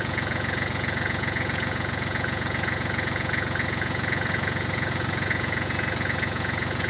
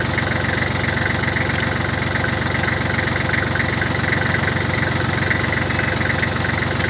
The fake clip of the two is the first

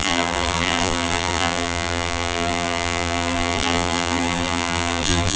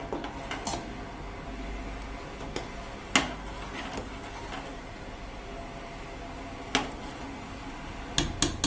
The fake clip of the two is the first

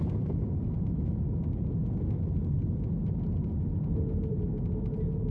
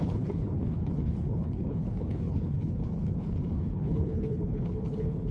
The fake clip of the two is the second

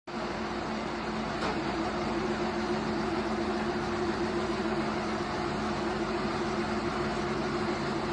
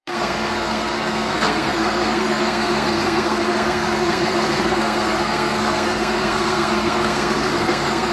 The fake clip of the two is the second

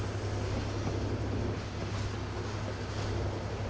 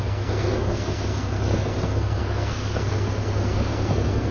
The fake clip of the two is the second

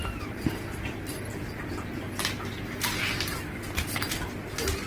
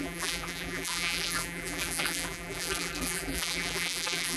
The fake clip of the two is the second